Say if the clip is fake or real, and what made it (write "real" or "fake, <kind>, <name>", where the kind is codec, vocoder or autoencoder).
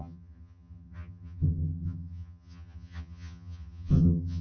fake, vocoder, HiFi-GAN